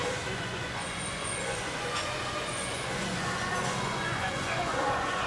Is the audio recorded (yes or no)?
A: no